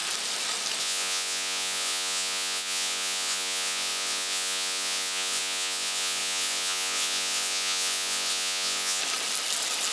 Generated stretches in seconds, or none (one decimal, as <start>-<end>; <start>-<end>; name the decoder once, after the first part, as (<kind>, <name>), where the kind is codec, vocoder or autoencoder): 0.8-9.0 (vocoder, Vocos)